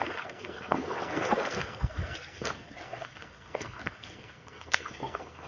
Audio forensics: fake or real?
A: fake